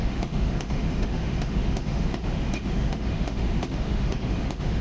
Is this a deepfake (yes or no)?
yes